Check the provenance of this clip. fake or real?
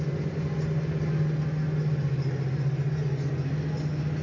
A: real